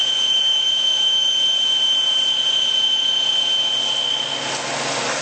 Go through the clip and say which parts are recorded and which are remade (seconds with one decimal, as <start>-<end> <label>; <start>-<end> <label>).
0.0-3.1 remade; 3.1-5.2 recorded